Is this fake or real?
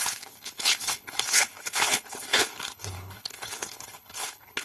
fake